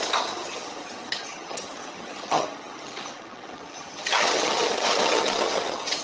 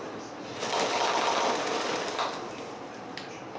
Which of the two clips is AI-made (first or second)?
first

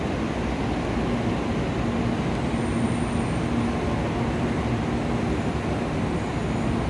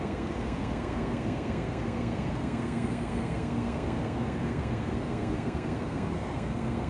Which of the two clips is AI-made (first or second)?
second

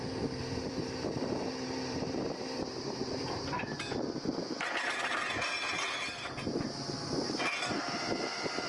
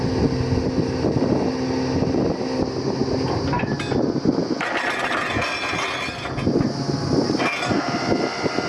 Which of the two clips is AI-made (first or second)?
first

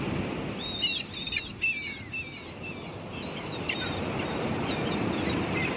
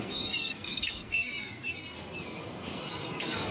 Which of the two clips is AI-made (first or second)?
second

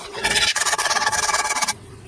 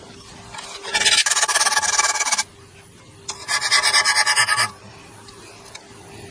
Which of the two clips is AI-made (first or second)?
first